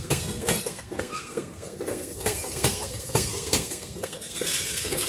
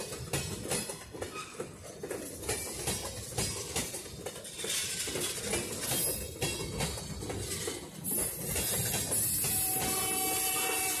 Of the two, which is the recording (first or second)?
second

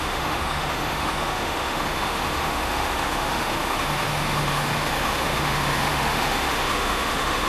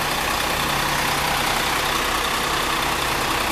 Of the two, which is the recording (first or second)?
second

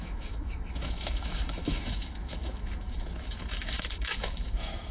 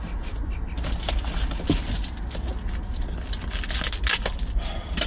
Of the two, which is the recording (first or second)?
second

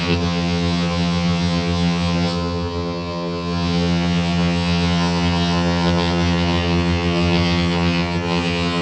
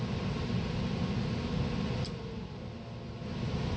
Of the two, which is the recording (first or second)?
second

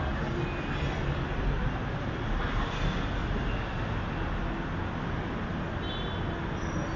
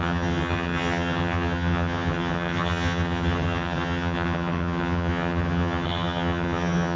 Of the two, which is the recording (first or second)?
first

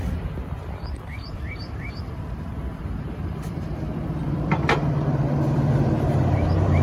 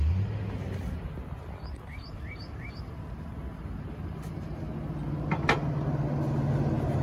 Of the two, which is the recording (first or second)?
second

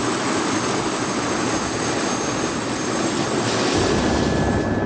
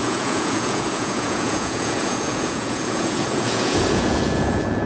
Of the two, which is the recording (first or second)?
first